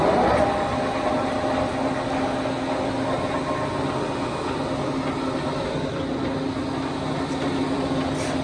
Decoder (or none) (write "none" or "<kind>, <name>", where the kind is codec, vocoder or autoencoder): none